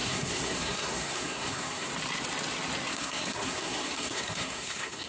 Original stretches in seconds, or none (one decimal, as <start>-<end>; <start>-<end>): 1.9-2.9